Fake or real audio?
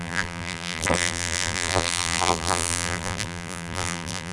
fake